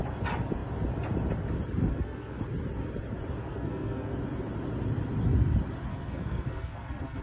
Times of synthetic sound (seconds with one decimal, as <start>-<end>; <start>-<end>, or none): 1.9-2.4; 3.4-4.1; 5.9-7.2